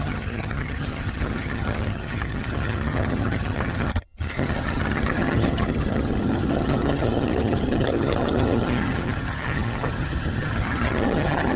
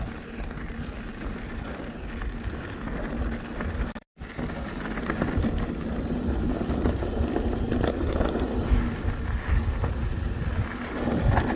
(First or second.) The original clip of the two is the second